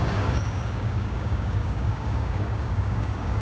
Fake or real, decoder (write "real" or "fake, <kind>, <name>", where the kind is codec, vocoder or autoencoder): fake, codec, DAC